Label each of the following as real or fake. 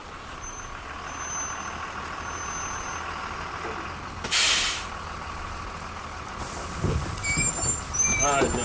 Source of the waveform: real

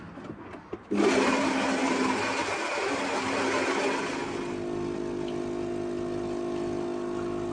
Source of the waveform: real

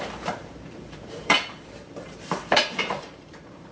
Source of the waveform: fake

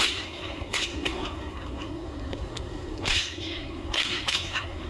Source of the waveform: fake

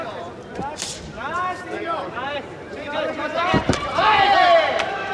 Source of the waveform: fake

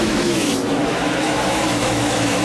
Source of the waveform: fake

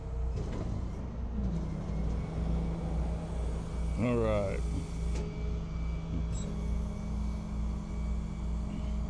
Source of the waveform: real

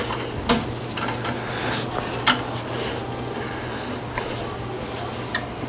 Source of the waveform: real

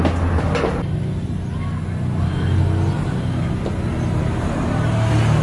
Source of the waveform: real